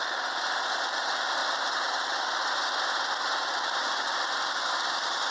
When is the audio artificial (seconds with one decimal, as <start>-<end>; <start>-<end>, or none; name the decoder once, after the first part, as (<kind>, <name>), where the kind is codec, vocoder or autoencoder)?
none